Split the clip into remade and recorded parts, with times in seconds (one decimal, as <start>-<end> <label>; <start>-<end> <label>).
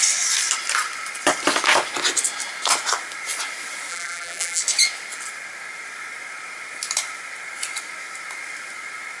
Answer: 0.0-3.9 recorded; 3.9-4.6 remade; 4.6-9.2 recorded